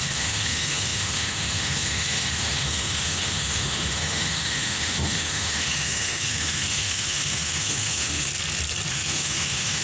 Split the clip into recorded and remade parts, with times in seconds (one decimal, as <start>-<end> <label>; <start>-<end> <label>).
0.0-8.3 remade; 8.3-8.9 recorded; 8.9-9.8 remade